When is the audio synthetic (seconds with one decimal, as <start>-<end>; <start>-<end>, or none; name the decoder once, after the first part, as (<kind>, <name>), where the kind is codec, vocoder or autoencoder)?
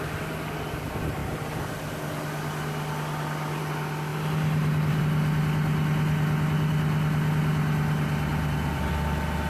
4.1-5.0 (vocoder, BigVGAN v2); 8.3-8.9